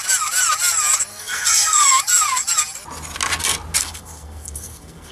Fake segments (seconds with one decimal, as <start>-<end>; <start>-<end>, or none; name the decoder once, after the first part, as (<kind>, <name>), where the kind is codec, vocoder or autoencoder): 1.1-1.9 (codec, SNAC); 3.8-5.1

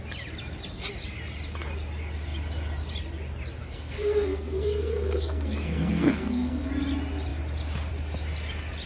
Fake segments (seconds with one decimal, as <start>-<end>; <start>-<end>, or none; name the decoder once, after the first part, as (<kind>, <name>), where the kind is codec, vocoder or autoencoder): 3.6-6.7 (codec, SNAC)

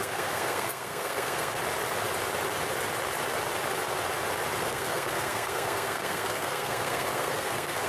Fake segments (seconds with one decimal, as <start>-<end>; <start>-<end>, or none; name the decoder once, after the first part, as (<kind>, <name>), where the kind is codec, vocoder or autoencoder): 0.0-1.6 (codec, SNAC); 4.6-7.9

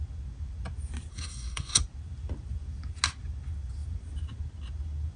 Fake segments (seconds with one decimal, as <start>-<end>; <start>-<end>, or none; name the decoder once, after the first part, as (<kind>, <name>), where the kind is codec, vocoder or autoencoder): 1.1-1.8 (codec, SNAC)

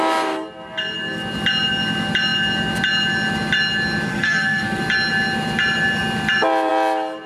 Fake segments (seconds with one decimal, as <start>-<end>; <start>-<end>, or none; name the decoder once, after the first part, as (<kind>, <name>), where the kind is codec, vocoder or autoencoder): 4.1-4.8 (codec, SNAC)

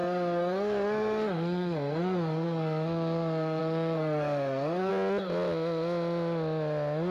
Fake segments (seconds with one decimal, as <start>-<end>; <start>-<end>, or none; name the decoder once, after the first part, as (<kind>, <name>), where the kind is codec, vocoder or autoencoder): 0.0-4.9 (codec, SNAC)

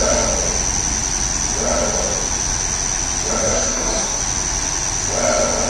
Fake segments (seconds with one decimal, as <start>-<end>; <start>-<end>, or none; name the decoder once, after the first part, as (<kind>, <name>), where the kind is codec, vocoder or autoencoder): 3.4-4.2 (codec, SNAC)

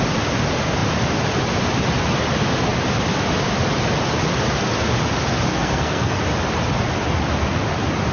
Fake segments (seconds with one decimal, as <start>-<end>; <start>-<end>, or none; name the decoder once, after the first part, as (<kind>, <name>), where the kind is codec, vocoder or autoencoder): 5.5-6.2 (codec, SNAC)